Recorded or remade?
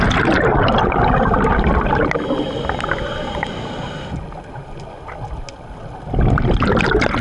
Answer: recorded